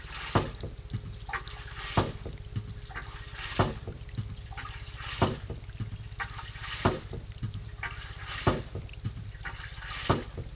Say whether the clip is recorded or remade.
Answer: recorded